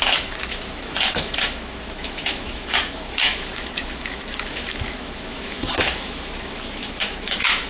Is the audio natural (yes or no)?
no